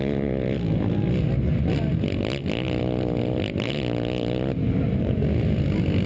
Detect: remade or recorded recorded